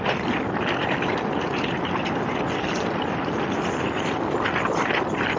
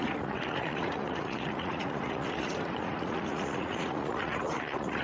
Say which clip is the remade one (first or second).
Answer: second